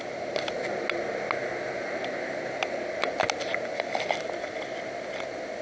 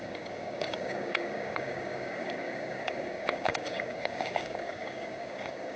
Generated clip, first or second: second